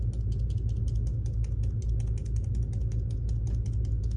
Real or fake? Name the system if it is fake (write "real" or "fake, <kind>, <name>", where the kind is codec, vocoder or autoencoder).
real